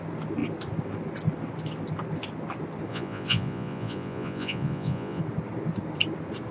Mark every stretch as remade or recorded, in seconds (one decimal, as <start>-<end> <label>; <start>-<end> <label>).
0.0-2.9 recorded; 2.9-5.2 remade; 5.2-6.5 recorded